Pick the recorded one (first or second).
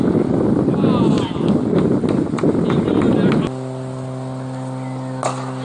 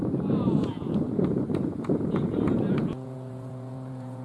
first